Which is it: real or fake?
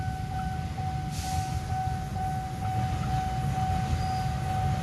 real